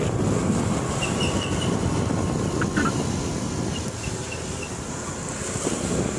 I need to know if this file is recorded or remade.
recorded